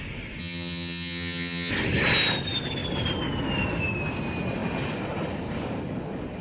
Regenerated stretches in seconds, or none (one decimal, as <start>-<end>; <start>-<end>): 0.4-1.7